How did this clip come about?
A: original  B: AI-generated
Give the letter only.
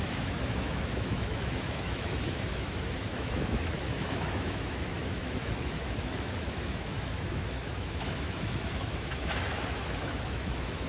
B